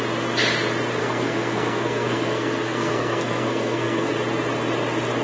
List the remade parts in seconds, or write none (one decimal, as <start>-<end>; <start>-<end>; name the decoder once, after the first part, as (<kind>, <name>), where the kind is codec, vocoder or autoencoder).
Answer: 1.0-4.1 (codec, SNAC)